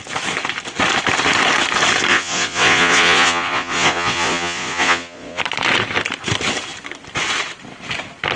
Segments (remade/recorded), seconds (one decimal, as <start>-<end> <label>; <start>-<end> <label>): 0.0-2.1 recorded; 2.1-5.4 remade; 5.4-8.4 recorded